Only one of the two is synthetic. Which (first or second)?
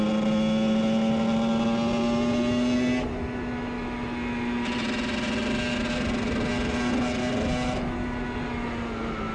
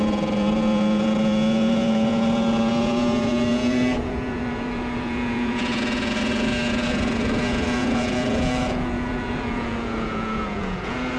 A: second